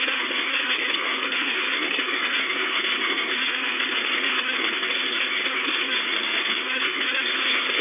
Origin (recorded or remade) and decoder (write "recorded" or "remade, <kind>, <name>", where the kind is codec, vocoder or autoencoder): remade, codec, SNAC